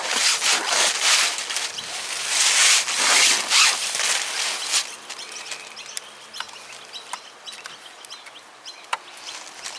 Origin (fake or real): real